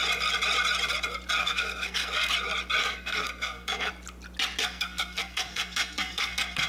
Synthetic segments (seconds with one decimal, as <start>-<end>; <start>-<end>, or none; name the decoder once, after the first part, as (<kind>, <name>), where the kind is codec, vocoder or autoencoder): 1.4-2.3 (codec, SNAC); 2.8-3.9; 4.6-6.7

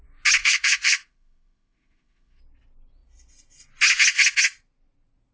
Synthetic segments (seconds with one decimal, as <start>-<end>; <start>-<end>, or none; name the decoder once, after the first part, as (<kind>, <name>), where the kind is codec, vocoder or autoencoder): 0.4-2.4 (autoencoder, DAC-VAE)

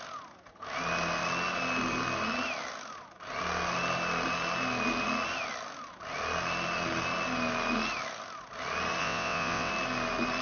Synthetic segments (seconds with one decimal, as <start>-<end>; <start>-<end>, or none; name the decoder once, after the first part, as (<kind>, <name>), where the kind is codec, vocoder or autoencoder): 9.0-9.7 (vocoder, WaveNeXt)

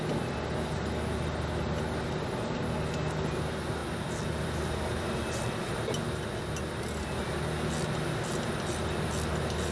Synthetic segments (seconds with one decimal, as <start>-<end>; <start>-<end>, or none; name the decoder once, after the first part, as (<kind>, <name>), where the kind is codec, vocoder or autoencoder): 3.8-5.6 (vocoder, BigVGAN v2)

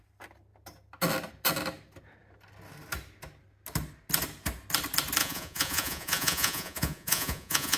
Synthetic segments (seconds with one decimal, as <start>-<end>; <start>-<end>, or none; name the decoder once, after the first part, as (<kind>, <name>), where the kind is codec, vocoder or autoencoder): 5.2-7.8 (vocoder, Vocos)

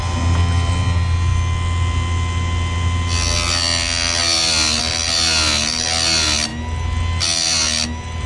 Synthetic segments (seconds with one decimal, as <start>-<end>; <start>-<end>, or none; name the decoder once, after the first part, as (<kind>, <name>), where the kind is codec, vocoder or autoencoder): none

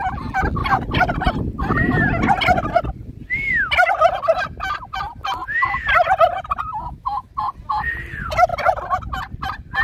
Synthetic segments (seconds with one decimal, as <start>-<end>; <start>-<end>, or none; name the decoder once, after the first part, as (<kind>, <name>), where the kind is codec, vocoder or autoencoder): 6.7-7.3 (autoencoder, DAC-VAE)